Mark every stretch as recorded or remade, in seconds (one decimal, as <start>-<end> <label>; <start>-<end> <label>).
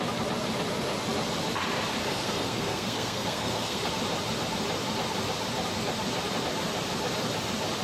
0.0-2.0 recorded; 2.0-3.9 remade; 3.9-7.8 recorded